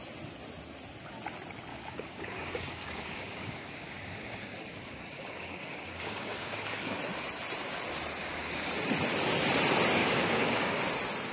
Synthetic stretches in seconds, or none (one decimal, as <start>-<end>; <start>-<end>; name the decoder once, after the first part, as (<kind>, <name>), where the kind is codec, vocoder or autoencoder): 1.7-7.0 (codec, DAC); 8.2-8.7; 10.0-10.8